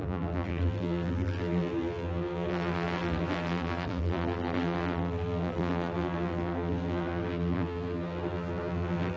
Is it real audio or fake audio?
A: fake